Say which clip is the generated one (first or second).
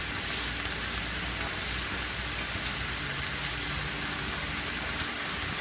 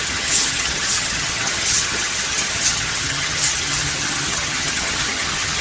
second